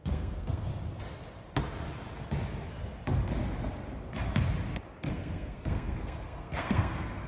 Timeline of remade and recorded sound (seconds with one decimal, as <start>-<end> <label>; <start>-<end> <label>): 0.0-0.7 remade; 0.7-5.1 recorded; 5.1-7.3 remade